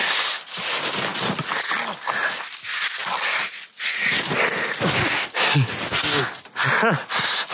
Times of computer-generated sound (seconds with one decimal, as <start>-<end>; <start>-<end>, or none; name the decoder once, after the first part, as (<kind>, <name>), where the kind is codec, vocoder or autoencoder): none